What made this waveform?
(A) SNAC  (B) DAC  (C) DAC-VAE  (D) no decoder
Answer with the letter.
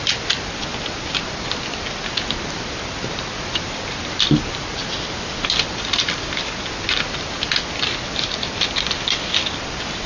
D